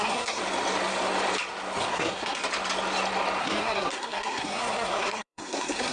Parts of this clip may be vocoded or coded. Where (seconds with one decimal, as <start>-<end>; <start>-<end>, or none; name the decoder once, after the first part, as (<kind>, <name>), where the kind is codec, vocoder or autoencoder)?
0.0-0.4 (codec, SNAC); 1.9-2.4; 3.4-5.9